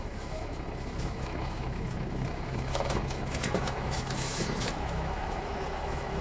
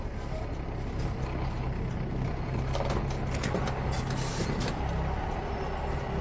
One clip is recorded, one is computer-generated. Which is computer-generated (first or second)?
first